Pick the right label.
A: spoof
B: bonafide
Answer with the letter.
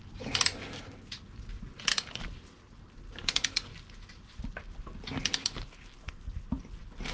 B